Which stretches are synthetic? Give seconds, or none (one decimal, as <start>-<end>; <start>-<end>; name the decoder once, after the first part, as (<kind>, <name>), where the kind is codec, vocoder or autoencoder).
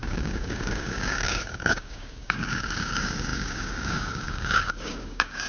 0.0-5.5 (codec, DAC)